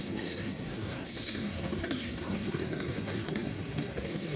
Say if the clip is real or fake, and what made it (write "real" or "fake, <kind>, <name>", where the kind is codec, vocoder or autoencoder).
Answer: fake, codec, SNAC